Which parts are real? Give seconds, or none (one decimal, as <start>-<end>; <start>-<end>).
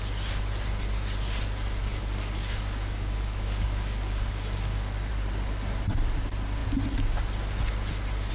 0.0-1.8; 5.1-8.3